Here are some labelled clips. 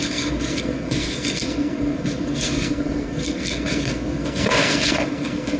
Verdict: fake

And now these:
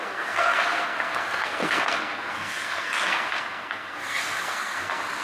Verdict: fake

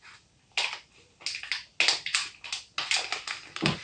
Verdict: real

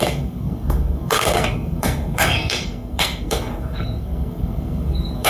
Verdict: fake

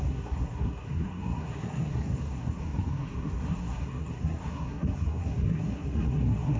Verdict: fake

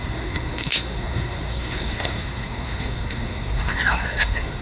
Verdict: fake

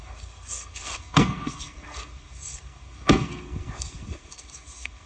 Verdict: fake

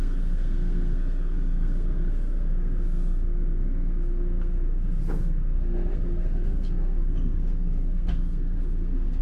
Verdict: fake